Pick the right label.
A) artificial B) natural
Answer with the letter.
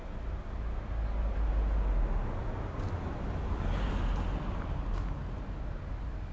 B